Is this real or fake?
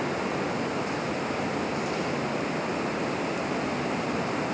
real